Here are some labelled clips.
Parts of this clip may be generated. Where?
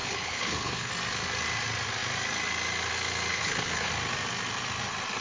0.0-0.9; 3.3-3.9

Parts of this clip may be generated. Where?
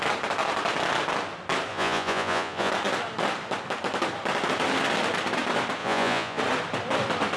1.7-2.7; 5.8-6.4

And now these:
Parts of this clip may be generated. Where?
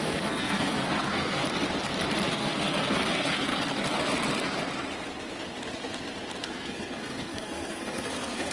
0.0-1.4; 2.3-3.5; 6.4-8.5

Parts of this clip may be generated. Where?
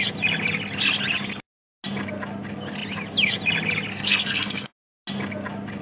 3.9-4.7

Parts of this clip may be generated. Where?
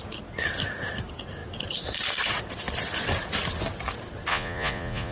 4.3-5.1